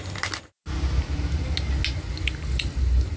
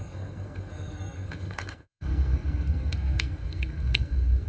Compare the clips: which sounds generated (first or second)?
second